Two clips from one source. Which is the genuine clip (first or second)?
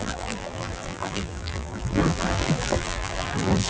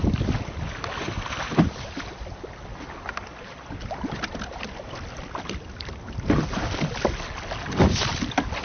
second